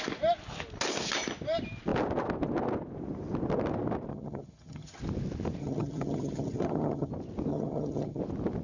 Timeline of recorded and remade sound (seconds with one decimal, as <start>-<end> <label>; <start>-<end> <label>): 0.0-4.1 recorded; 4.1-5.0 remade; 5.0-5.6 recorded; 5.6-7.1 remade; 7.1-7.5 recorded; 7.5-8.2 remade; 8.2-8.6 recorded